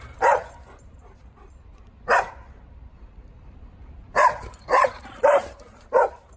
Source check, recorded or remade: remade